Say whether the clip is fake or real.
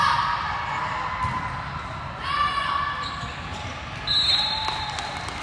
real